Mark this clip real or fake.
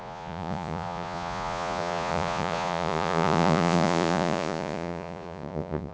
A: fake